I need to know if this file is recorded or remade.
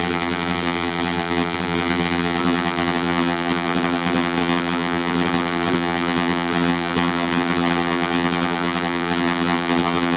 remade